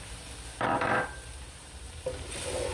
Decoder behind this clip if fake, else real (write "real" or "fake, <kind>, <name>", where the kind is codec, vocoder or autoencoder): real